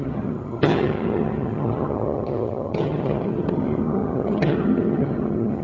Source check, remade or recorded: remade